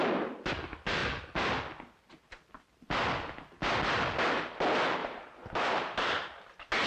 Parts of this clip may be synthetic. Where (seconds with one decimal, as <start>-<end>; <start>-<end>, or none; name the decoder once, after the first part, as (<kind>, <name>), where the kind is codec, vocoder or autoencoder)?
5.0-6.4 (vocoder, BigVGAN v2)